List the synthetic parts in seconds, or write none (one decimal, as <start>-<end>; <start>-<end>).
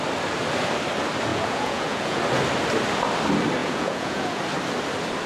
1.3-2.2; 3.6-4.4